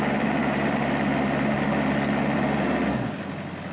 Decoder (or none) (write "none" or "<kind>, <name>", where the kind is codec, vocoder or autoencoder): none